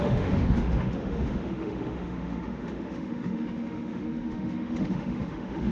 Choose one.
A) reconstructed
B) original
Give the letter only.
A